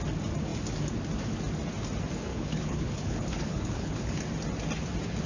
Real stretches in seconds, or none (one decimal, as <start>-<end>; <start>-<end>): 0.0-2.3; 4.2-5.3